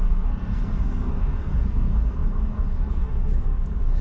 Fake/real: fake